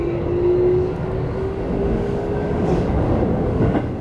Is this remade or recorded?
remade